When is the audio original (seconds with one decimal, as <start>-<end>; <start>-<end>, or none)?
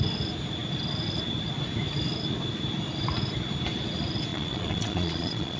0.0-4.3